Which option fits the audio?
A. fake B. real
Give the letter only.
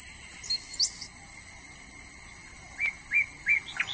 B